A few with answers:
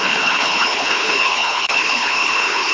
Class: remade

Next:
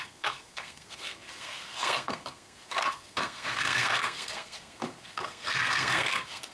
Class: remade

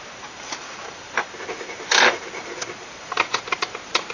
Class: remade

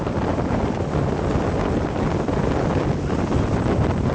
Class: recorded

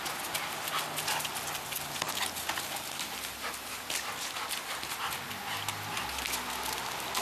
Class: recorded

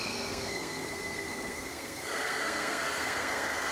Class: remade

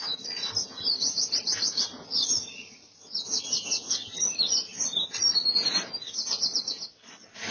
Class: recorded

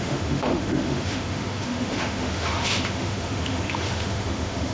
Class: remade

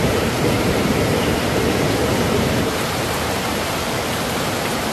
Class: remade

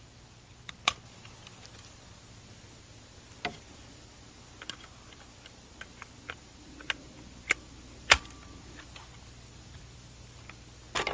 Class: recorded